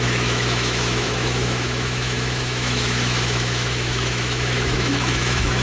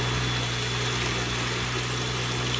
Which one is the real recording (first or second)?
second